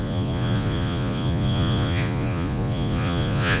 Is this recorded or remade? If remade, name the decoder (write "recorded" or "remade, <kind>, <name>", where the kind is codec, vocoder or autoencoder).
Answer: remade, vocoder, Vocos